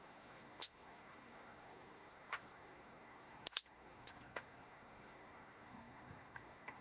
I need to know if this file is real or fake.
fake